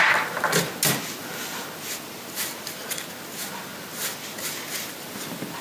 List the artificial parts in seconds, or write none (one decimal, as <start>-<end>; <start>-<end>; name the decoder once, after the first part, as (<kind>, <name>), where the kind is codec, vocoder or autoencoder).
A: none